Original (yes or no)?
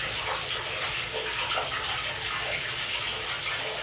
yes